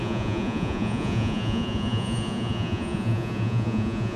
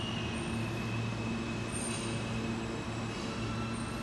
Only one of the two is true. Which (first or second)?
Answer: second